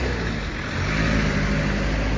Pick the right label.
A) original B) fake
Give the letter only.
A